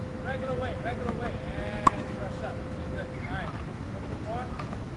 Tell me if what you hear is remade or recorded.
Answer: remade